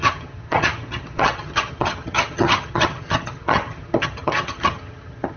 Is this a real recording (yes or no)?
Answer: no